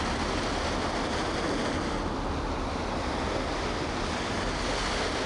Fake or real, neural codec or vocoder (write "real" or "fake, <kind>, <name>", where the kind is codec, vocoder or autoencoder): real